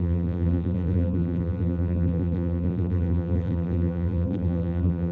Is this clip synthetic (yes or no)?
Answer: yes